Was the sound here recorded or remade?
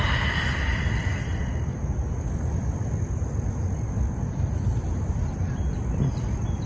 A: recorded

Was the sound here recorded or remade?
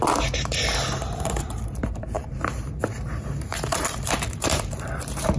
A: remade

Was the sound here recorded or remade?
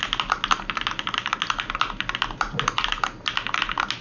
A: recorded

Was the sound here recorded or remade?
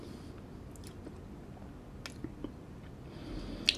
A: recorded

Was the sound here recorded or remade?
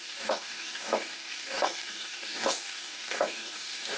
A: remade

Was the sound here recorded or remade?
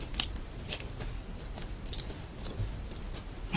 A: recorded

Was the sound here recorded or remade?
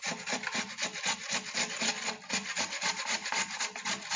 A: recorded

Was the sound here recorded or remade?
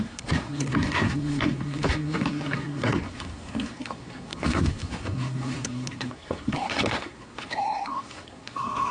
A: remade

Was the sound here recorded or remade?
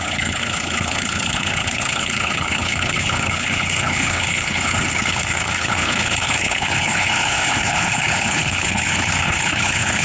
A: remade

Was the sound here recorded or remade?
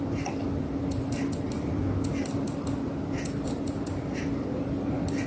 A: recorded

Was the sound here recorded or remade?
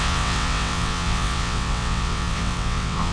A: remade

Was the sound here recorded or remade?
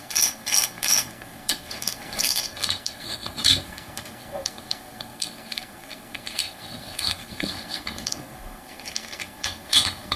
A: remade